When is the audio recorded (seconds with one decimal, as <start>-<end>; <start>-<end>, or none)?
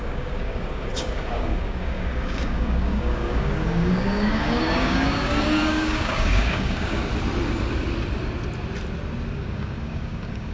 7.1-9.3